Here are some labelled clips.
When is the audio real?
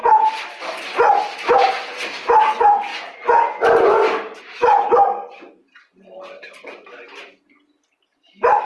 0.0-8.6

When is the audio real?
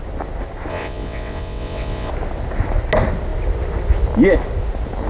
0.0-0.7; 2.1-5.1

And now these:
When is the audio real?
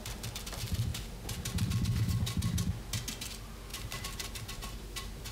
0.0-3.7; 4.4-5.3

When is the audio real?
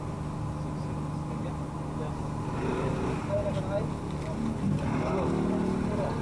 0.0-6.2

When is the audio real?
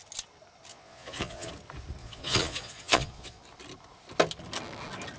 0.0-0.7; 1.5-2.0; 3.4-5.2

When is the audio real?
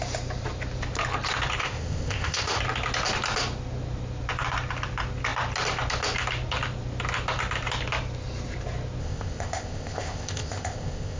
0.0-1.6; 2.6-9.0